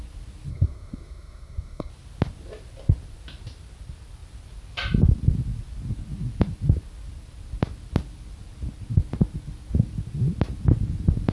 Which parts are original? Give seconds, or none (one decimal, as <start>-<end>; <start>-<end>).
0.0-0.5; 1.9-11.3